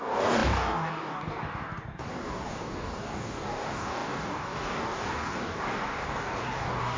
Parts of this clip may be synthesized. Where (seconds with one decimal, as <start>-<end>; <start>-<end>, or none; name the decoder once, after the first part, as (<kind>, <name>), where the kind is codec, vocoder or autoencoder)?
0.0-7.0 (codec, DAC)